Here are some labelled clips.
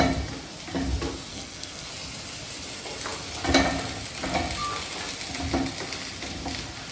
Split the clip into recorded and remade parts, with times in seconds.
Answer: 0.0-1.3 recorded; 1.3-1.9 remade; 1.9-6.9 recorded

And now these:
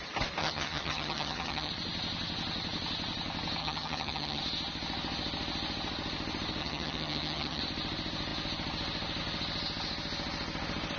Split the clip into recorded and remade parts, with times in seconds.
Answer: 0.0-0.4 recorded; 0.4-1.7 remade; 1.7-3.6 recorded; 3.6-4.4 remade; 4.4-6.6 recorded; 6.6-7.6 remade; 7.6-11.0 recorded

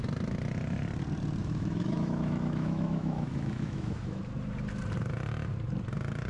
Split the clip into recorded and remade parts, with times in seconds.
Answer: 0.0-1.4 recorded; 1.4-4.2 remade; 4.2-6.3 recorded

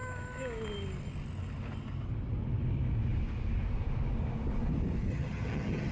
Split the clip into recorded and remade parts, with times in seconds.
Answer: 0.0-5.1 recorded; 5.1-5.9 remade

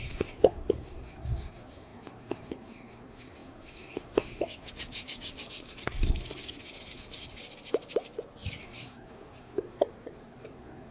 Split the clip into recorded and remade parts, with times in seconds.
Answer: 0.0-7.4 remade; 7.4-8.6 recorded; 8.6-10.9 remade

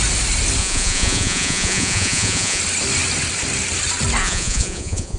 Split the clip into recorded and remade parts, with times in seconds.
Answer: 0.0-0.6 recorded; 0.6-2.6 remade; 2.6-4.2 recorded; 4.2-5.2 remade